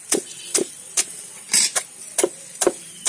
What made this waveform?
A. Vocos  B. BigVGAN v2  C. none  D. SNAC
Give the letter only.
C